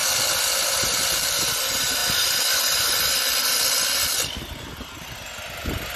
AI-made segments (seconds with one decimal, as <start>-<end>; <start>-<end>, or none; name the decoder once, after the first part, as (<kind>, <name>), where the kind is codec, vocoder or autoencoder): 0.0-1.3 (vocoder, BigVGAN v2); 2.0-3.4